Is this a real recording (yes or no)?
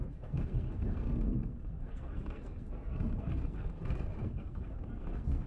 no